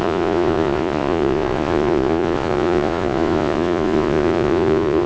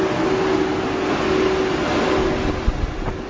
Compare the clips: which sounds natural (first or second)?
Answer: second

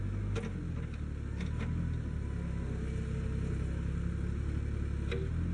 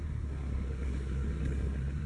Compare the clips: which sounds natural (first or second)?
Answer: first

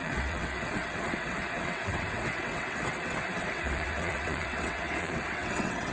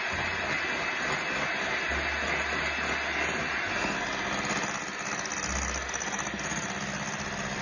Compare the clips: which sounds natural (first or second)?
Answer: second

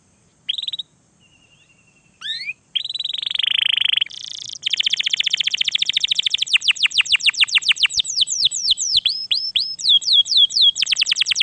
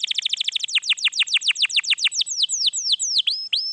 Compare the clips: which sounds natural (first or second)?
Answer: second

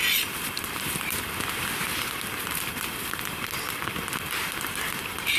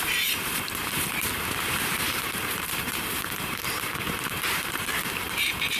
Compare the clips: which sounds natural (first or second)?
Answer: first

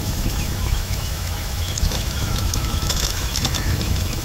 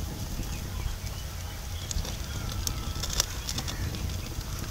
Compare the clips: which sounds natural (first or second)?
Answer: second